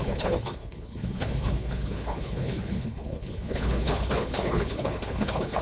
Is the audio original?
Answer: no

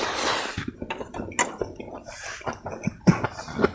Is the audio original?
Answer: yes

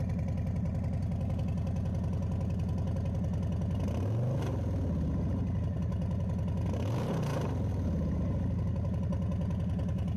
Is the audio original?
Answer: yes